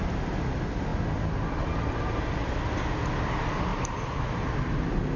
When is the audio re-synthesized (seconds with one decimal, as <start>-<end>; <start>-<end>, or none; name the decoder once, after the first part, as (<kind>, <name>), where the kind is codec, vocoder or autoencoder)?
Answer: none

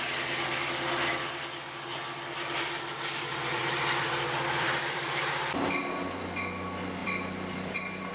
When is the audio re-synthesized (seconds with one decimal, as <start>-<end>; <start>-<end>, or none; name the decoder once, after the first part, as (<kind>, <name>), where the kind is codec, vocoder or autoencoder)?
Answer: 1.9-5.8 (vocoder, BigVGAN v2); 7.0-8.1

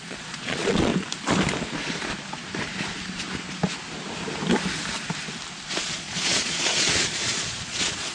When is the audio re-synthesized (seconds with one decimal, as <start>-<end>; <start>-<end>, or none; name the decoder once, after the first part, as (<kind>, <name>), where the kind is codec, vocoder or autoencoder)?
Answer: 0.0-0.9 (vocoder, Vocos); 5.8-8.1

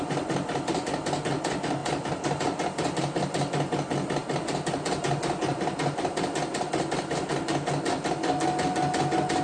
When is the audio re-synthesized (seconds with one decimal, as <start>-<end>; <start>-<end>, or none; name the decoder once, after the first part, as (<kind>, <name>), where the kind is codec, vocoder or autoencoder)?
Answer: none

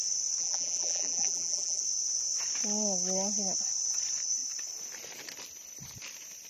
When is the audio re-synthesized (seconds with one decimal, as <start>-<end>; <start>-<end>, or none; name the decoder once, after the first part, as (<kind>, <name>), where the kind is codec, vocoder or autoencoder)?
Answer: 0.4-1.8 (vocoder, BigVGAN v2)